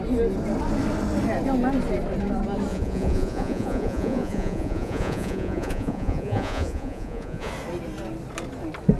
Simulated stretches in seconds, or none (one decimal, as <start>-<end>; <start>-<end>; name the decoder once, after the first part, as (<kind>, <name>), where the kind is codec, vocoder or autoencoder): 2.7-7.5 (vocoder, Vocos)